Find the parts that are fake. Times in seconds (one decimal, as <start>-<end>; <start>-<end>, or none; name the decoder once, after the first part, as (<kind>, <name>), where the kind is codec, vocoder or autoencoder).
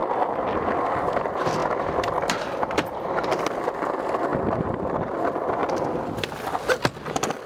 1.6-3.5 (vocoder, BigVGAN v2)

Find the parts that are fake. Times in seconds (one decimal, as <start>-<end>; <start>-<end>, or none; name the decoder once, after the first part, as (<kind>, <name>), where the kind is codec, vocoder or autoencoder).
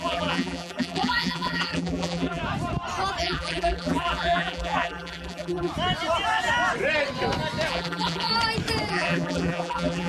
0.0-2.4 (vocoder, BigVGAN v2); 3.2-5.7; 7.7-8.3; 8.9-10.1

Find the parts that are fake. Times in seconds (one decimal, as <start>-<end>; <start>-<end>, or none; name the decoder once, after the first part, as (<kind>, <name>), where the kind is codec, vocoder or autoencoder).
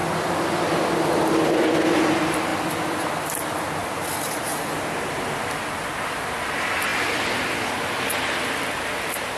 2.5-3.0 (vocoder, BigVGAN v2); 6.9-8.4